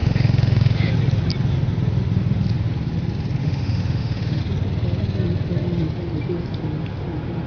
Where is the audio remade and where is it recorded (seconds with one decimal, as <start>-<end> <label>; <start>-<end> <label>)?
0.0-0.9 remade; 0.9-3.4 recorded; 3.4-4.4 remade; 4.4-7.5 recorded